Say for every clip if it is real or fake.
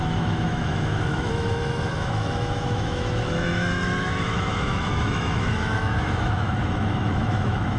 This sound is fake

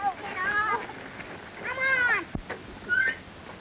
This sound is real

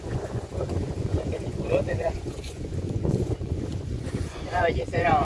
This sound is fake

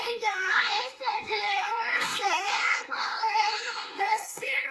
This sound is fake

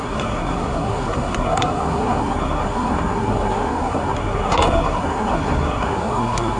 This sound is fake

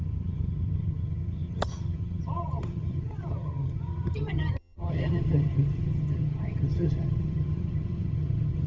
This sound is fake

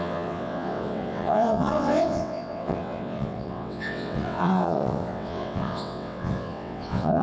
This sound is fake